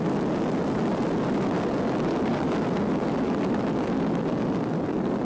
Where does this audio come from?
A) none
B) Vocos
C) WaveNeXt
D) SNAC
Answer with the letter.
A